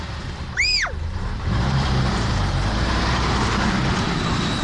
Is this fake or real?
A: fake